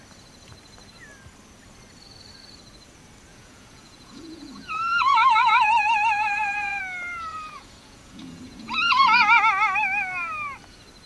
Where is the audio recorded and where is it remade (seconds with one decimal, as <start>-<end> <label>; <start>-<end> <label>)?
0.0-3.3 recorded; 3.3-6.8 remade; 6.8-7.3 recorded; 7.3-9.4 remade; 9.4-11.1 recorded